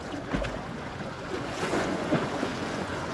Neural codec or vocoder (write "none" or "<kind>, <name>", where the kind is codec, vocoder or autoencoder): vocoder, Vocos